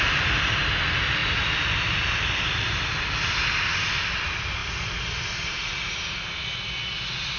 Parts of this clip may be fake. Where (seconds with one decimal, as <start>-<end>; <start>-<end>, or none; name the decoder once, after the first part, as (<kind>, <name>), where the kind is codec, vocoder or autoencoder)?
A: none